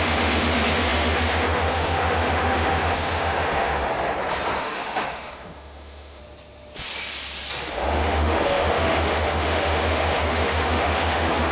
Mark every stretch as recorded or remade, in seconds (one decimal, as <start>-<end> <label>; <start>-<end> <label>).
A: 0.0-3.9 remade; 3.9-4.6 recorded; 4.6-6.2 remade; 6.2-7.7 recorded; 7.7-11.5 remade